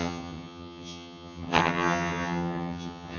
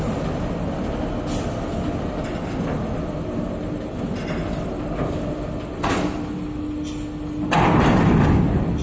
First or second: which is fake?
first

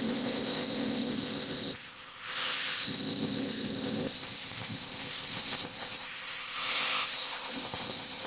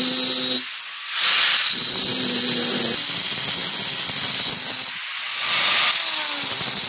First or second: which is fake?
first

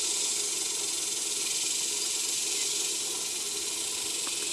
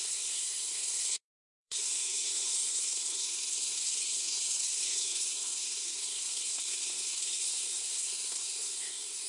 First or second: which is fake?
second